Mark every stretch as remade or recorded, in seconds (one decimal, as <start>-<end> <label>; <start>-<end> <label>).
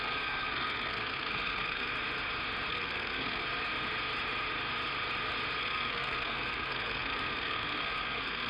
0.0-1.9 remade; 1.9-2.7 recorded; 2.7-3.4 remade; 3.4-5.6 recorded; 5.6-8.5 remade